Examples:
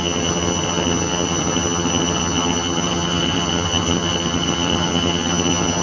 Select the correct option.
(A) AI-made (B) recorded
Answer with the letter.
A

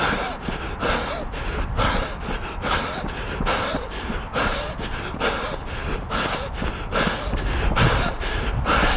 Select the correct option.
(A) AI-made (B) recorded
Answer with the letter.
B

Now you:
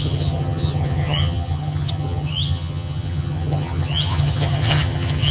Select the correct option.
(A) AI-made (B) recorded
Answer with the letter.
A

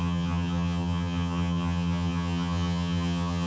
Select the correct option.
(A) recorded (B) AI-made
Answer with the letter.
B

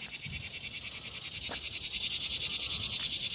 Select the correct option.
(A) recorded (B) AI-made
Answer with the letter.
A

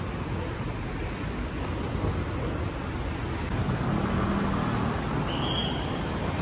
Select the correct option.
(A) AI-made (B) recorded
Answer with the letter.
B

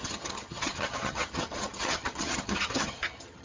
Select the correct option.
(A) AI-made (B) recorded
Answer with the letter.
A